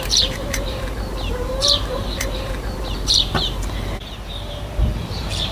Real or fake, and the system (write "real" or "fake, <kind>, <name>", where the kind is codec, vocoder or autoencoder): fake, vocoder, BigVGAN v2